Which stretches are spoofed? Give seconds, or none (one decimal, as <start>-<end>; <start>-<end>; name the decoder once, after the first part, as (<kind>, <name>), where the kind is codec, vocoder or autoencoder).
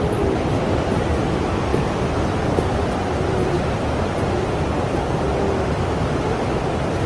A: none